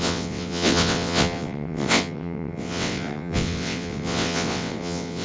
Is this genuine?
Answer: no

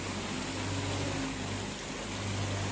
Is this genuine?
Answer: yes